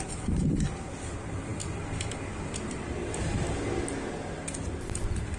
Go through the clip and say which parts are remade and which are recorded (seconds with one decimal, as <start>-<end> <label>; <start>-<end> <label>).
0.0-5.4 recorded